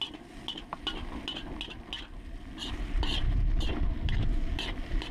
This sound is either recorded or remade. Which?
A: recorded